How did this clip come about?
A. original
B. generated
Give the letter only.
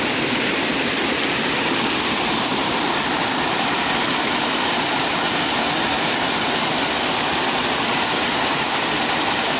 A